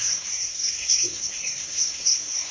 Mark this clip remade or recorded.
remade